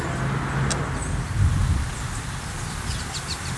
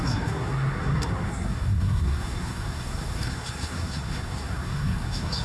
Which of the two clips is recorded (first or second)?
first